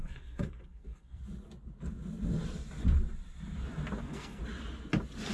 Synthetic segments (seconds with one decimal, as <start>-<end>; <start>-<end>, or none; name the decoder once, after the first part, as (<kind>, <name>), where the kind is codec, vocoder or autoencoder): 0.0-1.2 (codec, SNAC); 4.0-4.4